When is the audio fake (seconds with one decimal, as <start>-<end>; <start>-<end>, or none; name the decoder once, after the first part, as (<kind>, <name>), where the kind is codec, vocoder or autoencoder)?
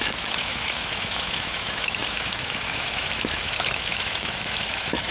0.0-5.1 (autoencoder, DAC-VAE)